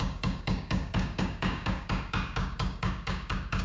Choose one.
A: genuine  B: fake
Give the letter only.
B